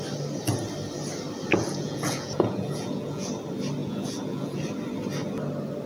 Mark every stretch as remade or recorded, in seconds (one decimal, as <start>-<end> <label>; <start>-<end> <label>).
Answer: 0.0-1.5 recorded; 1.5-3.3 remade; 3.3-3.8 recorded; 3.8-4.6 remade; 4.6-5.9 recorded